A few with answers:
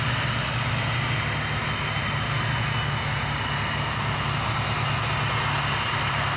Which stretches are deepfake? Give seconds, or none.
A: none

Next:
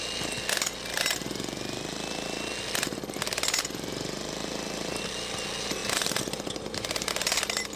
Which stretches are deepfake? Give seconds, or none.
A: 5.8-7.1 (vocoder, BigVGAN v2)

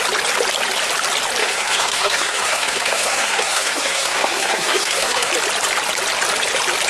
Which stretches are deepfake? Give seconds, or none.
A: 1.4-5.3 (codec, SNAC)

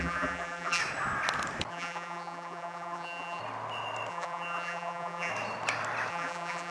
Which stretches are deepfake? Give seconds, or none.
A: 0.0-0.8 (vocoder, BigVGAN v2); 1.7-3.4; 4.1-5.3; 6.1-6.7

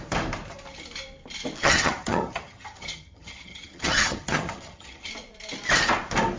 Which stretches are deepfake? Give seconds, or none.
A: 1.6-5.1 (vocoder, HiFi-GAN)

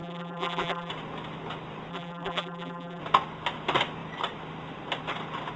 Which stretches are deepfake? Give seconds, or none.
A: 0.0-0.9 (vocoder, BigVGAN v2); 1.9-3.0

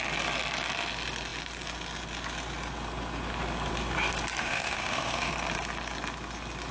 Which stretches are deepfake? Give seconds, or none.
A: 4.4-5.3 (autoencoder, DAC-VAE)